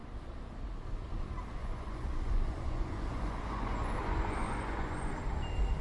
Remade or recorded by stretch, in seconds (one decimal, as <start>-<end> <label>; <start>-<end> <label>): 0.0-1.6 recorded; 1.6-5.1 remade; 5.1-5.8 recorded